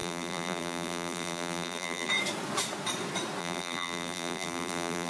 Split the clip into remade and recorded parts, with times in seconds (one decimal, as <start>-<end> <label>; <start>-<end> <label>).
0.0-2.1 remade; 2.1-3.4 recorded; 3.4-5.1 remade